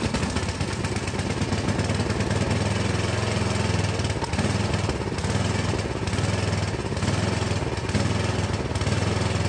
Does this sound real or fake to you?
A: real